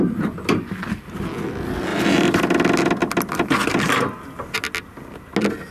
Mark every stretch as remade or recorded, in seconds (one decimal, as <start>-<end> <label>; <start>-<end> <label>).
0.0-1.9 recorded; 1.9-2.4 remade; 2.4-5.7 recorded